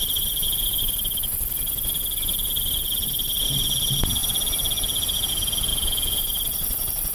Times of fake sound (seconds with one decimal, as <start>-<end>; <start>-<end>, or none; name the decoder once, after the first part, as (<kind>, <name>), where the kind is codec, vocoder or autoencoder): 0.4-0.9 (vocoder, Vocos); 5.7-6.2